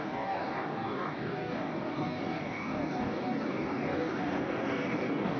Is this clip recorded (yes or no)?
no